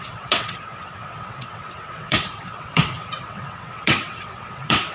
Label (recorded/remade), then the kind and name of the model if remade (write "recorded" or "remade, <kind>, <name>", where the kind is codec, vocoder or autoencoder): remade, vocoder, WaveNeXt